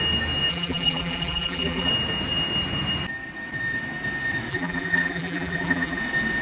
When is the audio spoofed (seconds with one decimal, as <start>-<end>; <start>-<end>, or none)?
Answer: 0.5-1.9; 4.5-6.0